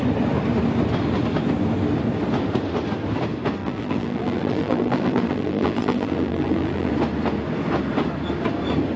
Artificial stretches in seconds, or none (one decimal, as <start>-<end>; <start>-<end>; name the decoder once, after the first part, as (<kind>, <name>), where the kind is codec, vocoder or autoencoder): 3.6-6.9 (vocoder, BigVGAN v2)